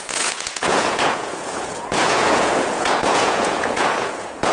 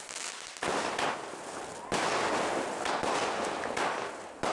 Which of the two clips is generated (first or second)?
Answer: first